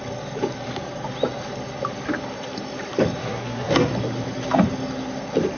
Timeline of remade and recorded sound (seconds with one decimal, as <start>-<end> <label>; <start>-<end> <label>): 0.0-3.2 recorded; 3.2-3.9 remade; 3.9-5.6 recorded